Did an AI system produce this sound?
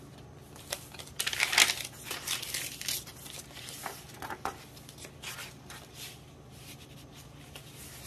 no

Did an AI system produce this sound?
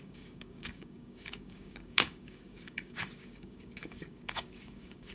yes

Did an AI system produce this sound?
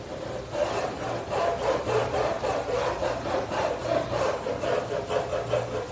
no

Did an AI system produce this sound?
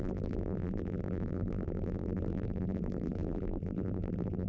yes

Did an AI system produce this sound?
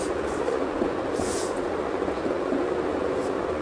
yes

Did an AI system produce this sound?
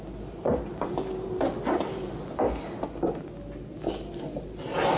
no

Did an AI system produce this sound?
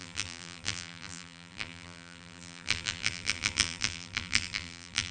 yes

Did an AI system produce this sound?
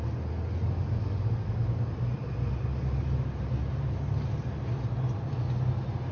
no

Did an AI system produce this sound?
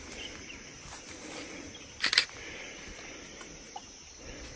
no